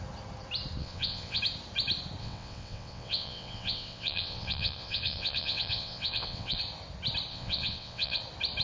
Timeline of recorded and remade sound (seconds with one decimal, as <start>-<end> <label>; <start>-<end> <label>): 0.0-0.8 recorded; 0.8-1.4 remade; 1.4-2.2 recorded; 2.2-6.6 remade; 6.6-7.3 recorded; 7.3-8.2 remade; 8.2-8.6 recorded